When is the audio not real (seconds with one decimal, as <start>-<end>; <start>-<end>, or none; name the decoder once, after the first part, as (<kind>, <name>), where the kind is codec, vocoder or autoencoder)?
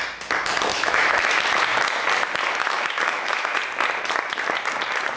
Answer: 0.7-1.4 (autoencoder, DAC-VAE); 2.6-3.6